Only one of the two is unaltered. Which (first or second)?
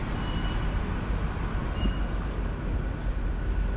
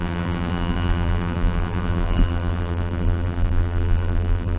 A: first